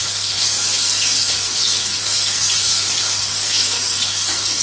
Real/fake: fake